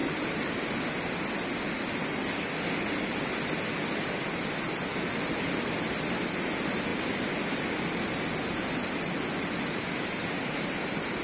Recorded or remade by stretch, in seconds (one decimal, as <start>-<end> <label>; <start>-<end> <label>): 0.0-6.9 recorded; 6.9-8.2 remade; 8.2-11.2 recorded